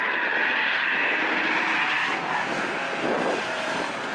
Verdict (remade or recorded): recorded